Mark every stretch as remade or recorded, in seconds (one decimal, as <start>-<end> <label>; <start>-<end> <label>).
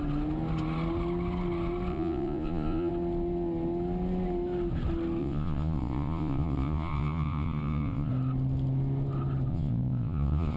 0.0-1.9 recorded; 1.9-2.9 remade; 2.9-5.2 recorded; 5.2-8.1 remade; 8.1-9.5 recorded; 9.5-10.6 remade